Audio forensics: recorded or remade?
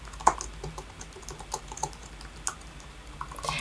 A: recorded